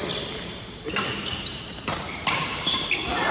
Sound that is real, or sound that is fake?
fake